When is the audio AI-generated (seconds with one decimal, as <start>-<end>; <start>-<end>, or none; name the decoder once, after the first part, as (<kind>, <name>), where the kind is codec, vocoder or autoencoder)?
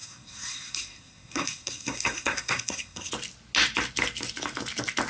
0.0-3.1 (codec, SNAC)